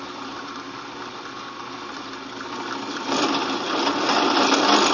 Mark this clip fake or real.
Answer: real